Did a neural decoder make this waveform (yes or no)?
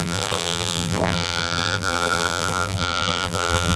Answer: yes